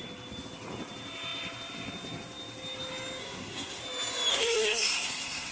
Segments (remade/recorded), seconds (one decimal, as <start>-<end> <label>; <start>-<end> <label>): 0.0-3.2 recorded; 3.2-3.8 remade; 3.8-4.3 recorded; 4.3-5.5 remade